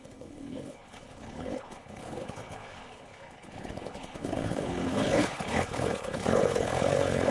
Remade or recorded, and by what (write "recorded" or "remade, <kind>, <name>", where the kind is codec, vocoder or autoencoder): remade, codec, HILCodec